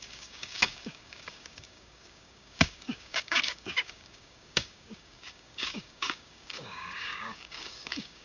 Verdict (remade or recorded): remade